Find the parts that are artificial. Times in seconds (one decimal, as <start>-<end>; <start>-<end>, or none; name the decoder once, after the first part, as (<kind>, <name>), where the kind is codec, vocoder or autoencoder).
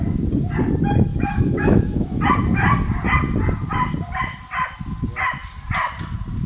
1.1-2.2 (autoencoder, DAC-VAE)